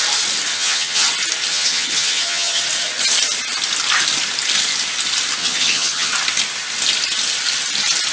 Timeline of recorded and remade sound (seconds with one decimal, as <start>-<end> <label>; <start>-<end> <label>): 0.0-0.5 recorded; 0.5-1.1 remade; 1.1-1.5 recorded; 1.5-2.6 remade; 2.6-5.4 recorded; 5.4-6.1 remade; 6.1-8.1 recorded